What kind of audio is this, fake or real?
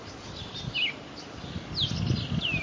real